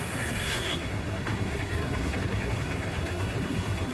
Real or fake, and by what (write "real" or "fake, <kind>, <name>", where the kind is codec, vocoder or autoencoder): fake, codec, SNAC